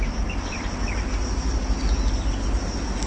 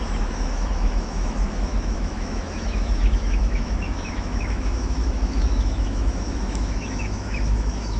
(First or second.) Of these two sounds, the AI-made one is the second